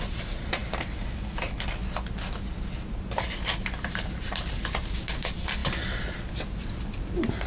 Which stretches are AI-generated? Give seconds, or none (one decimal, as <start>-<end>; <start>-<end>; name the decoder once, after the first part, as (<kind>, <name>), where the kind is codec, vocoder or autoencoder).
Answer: 0.0-0.6 (vocoder, BigVGAN v2); 2.9-7.5